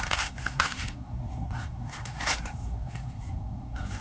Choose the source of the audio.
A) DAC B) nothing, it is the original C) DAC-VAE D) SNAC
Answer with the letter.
D